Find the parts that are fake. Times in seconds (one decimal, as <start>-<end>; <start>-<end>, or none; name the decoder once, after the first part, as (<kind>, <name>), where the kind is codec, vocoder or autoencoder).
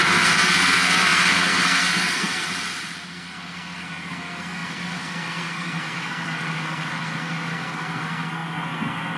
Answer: 0.0-2.5 (codec, SNAC); 3.1-9.2